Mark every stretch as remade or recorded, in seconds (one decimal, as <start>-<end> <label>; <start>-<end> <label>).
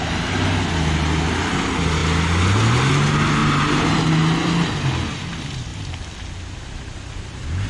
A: 0.0-7.7 recorded